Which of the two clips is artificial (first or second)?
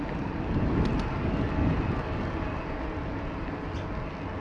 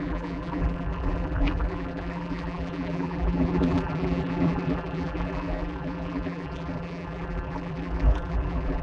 second